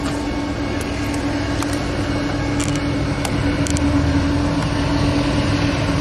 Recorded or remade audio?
recorded